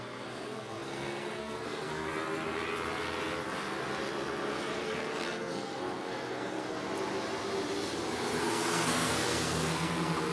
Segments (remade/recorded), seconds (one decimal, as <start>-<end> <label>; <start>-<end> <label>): 0.0-2.1 remade; 2.1-4.5 recorded; 4.5-6.8 remade; 6.8-8.4 recorded; 8.4-10.3 remade